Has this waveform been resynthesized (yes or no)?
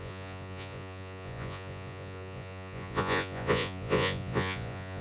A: yes